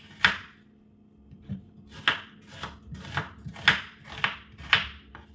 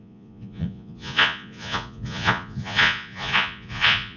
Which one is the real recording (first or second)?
first